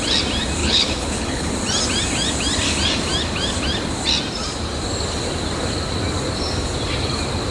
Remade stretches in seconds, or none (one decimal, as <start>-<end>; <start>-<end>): 0.6-1.5